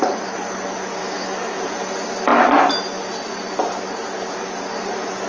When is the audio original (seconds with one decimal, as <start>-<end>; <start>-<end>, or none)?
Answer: 0.0-1.0; 1.6-5.3

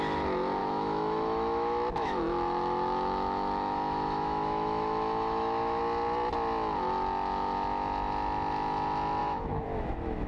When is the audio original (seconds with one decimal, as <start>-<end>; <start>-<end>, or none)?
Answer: 0.0-0.6; 5.8-9.2

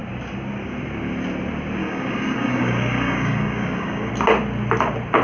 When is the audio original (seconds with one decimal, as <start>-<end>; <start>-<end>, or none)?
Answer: 0.0-1.8; 4.1-5.2

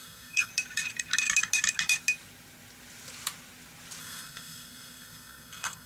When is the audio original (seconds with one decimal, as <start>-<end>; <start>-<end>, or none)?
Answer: 0.5-4.0

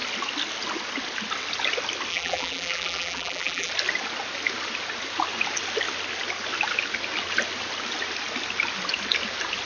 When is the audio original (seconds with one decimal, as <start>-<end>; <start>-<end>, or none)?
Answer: 0.0-2.1; 3.7-9.7

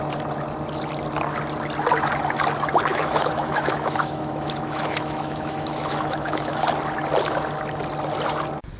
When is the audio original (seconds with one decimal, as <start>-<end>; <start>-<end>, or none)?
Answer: 0.0-2.9; 6.6-8.8

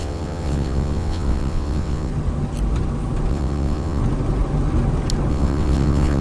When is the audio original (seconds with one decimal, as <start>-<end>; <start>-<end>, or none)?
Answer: 2.1-3.3; 4.0-5.3